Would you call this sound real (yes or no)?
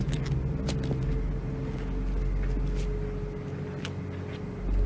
yes